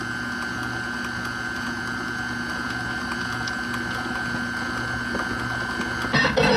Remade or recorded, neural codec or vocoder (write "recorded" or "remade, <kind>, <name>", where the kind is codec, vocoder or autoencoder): recorded